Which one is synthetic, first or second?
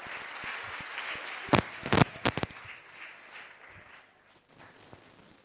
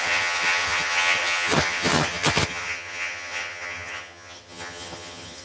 second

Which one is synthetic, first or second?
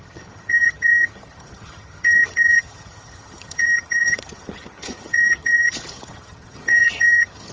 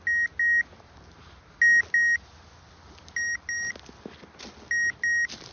first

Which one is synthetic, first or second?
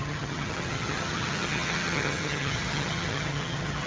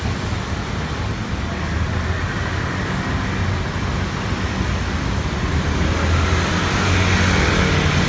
first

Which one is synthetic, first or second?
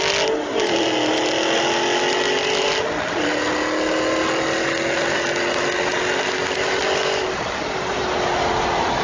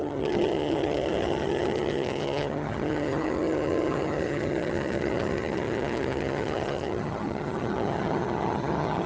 second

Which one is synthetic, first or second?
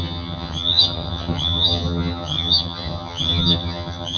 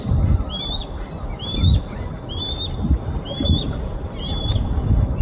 first